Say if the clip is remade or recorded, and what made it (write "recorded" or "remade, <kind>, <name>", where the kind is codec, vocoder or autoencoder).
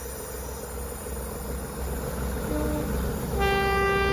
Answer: recorded